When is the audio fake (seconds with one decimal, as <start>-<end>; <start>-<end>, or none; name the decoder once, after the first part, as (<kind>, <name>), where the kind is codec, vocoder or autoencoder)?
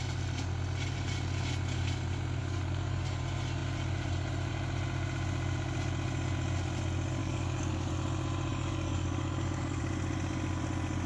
2.4-3.2 (codec, DAC); 7.2-7.9; 8.5-9.8